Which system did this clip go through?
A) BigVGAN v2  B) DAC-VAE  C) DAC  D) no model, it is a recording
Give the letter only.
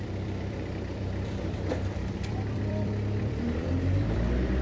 A